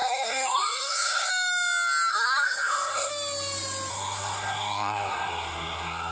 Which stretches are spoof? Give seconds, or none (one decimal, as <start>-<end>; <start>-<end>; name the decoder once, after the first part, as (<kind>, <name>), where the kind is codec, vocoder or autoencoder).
0.0-1.3 (codec, SNAC); 2.1-3.1; 3.9-6.1